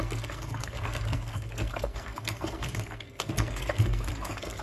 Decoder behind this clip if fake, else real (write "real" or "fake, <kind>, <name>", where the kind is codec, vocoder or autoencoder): fake, codec, SNAC